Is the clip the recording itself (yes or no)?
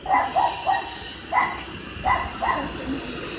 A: yes